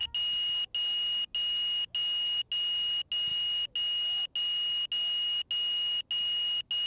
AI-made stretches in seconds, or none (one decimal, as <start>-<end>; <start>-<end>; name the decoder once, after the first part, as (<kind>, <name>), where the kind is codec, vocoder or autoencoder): none